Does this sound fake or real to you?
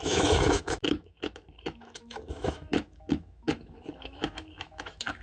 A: fake